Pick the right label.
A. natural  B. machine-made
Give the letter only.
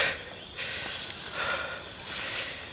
A